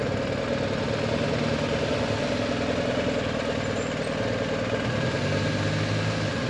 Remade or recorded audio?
recorded